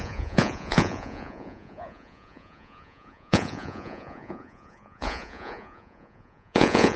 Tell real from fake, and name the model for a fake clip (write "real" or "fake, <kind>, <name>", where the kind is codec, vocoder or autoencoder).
fake, vocoder, Vocos